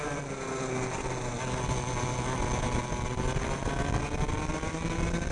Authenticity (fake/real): real